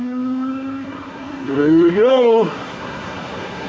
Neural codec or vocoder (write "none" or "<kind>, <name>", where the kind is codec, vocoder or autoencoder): codec, SNAC